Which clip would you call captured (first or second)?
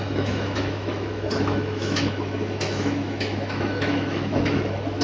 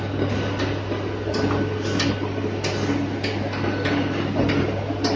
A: second